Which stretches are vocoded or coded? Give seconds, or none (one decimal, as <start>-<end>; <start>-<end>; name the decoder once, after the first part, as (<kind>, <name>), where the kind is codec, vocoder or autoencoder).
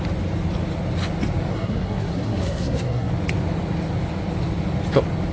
1.5-3.1 (codec, SNAC)